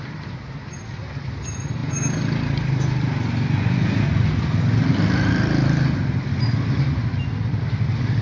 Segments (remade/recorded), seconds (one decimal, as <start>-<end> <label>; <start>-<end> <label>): 0.0-8.2 recorded